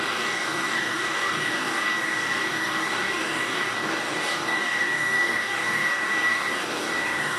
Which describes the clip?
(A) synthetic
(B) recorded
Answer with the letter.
A